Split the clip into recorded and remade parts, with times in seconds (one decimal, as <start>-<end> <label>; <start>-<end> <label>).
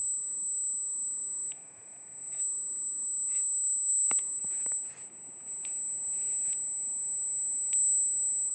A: 0.0-4.4 remade; 4.4-8.5 recorded